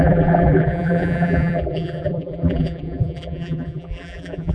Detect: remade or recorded remade